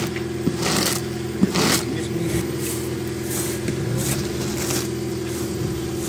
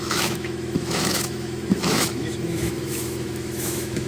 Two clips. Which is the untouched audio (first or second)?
first